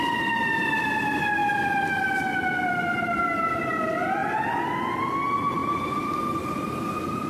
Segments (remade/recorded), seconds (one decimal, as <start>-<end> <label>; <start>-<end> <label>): 0.0-4.2 remade; 4.2-5.0 recorded; 5.0-7.3 remade